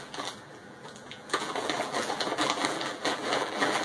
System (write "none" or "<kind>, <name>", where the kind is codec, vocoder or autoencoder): vocoder, BigVGAN v2